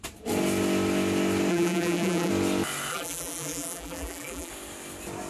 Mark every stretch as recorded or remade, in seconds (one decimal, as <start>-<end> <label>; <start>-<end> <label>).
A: 0.0-1.5 recorded; 1.5-2.3 remade; 2.3-2.9 recorded; 2.9-4.5 remade; 4.5-5.3 recorded